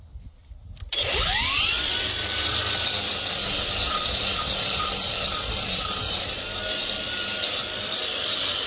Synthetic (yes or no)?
yes